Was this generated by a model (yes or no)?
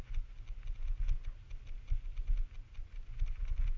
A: no